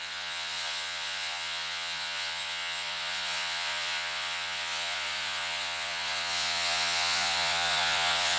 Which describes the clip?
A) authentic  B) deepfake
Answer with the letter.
B